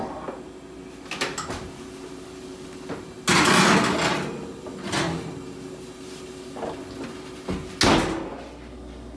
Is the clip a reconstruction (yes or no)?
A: no